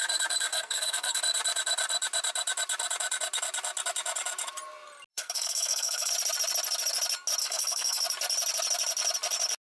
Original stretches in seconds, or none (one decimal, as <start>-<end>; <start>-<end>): 0.0-0.5; 1.2-5.1; 6.1-7.4; 8.0-9.7